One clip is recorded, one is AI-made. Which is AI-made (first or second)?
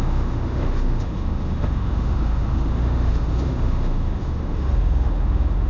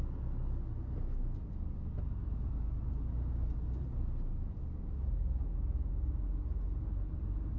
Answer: first